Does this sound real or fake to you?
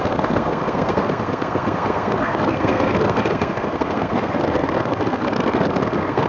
fake